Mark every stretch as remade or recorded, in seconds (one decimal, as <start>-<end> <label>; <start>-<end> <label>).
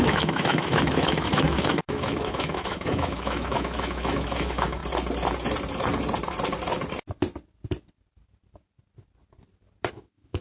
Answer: 0.0-4.8 remade; 4.8-9.9 recorded; 9.9-10.4 remade